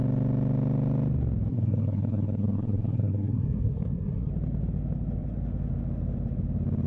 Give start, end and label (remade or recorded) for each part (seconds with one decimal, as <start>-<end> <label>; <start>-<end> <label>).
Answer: 0.0-1.5 recorded; 1.5-4.3 remade; 4.3-6.9 recorded